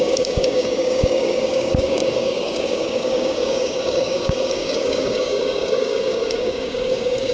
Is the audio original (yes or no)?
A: no